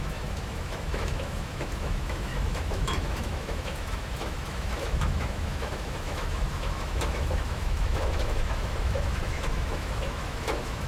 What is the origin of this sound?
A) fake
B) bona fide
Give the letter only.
A